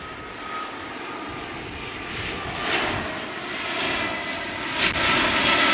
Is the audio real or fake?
real